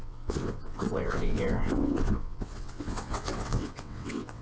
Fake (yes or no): yes